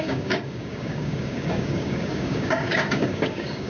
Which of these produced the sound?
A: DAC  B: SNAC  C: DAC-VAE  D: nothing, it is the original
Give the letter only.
A